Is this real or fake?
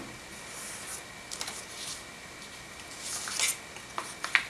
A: real